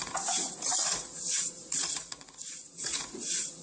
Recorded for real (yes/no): no